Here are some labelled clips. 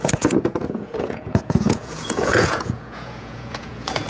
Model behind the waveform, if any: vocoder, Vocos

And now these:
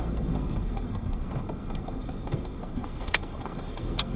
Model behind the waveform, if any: codec, SNAC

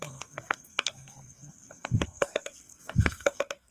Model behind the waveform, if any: codec, SNAC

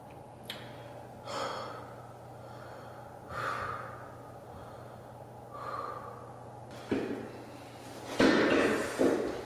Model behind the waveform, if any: none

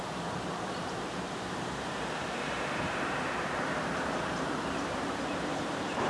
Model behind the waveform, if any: vocoder, BigVGAN v2